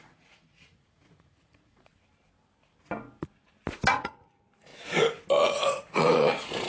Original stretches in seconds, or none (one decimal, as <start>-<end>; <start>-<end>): 1.9-3.9; 4.7-5.3